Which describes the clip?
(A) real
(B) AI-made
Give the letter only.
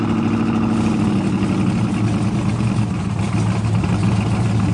A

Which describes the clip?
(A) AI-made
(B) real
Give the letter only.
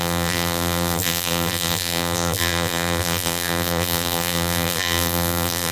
A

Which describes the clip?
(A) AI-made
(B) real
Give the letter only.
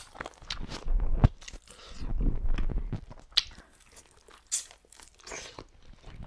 B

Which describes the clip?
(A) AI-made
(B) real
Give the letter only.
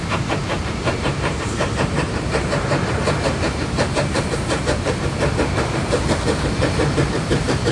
A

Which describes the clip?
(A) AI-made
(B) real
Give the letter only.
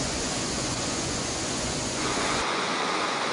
A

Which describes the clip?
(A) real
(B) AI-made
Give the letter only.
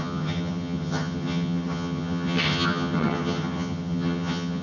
B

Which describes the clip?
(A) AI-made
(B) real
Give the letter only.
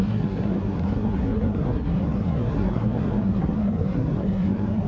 A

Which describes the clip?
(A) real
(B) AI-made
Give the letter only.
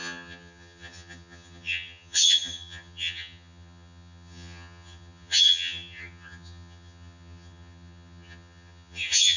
B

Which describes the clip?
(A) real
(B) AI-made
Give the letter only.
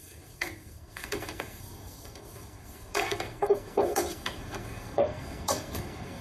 B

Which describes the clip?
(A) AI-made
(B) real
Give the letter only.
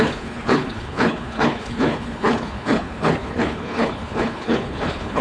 A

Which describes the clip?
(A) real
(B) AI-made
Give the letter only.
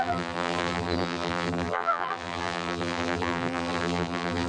B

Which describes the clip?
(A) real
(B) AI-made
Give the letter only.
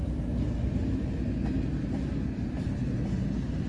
A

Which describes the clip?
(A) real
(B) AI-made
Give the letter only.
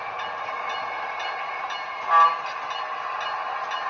A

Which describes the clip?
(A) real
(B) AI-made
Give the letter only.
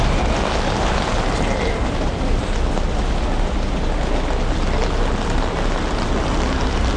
A